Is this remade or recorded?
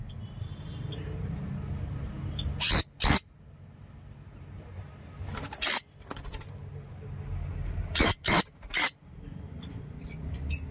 recorded